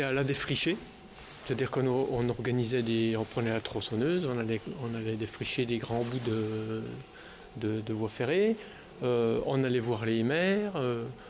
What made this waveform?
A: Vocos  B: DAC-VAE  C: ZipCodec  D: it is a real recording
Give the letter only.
D